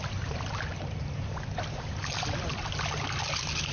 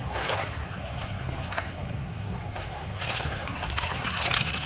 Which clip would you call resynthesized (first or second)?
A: second